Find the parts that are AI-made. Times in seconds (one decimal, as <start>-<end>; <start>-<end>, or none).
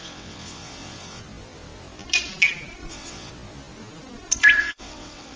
0.0-1.2; 2.9-3.3; 4.6-5.4